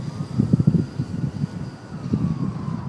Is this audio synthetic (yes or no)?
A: no